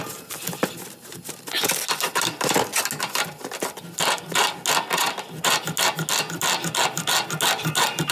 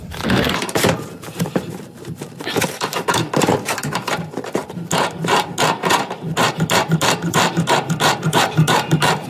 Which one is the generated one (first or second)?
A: second